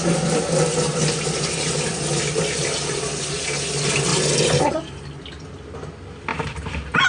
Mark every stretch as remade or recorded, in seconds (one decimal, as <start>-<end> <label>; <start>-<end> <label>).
0.0-7.1 recorded